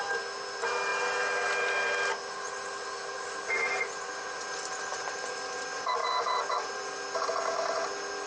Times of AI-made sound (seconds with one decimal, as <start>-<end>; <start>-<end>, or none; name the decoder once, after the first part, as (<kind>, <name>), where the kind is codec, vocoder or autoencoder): none